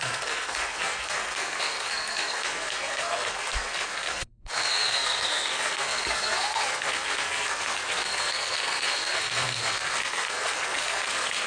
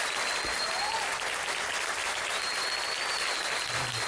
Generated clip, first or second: first